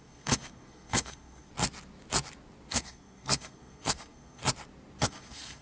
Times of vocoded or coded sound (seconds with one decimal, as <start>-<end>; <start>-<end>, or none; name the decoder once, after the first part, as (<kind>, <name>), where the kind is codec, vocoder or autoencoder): 0.0-1.5 (codec, SNAC); 2.7-4.4; 5.0-5.6